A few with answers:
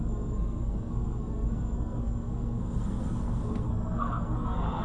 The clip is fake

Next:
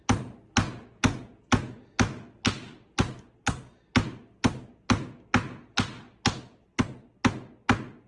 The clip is real